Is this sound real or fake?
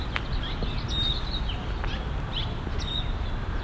real